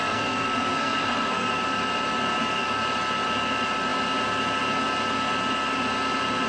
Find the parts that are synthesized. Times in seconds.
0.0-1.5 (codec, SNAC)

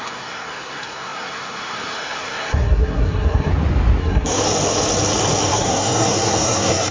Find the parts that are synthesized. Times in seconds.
0.0-3.5 (codec, SNAC); 4.0-4.4; 5.5-6.9

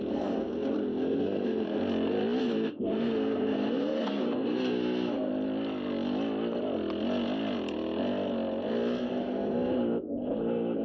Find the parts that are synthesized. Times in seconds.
0.0-1.8 (codec, SNAC); 2.4-5.3; 9.2-10.8

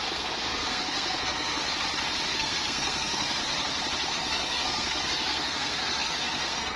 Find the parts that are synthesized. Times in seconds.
0.0-1.6 (codec, SNAC); 2.3-3.4; 4.1-6.8